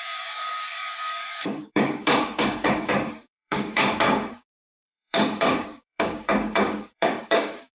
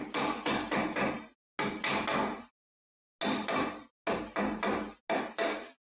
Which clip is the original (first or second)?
second